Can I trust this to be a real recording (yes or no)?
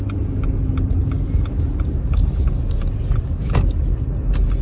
yes